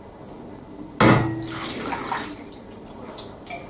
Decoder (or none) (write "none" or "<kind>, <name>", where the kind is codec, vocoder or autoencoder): none